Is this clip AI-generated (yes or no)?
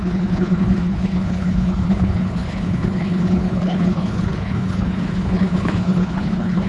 yes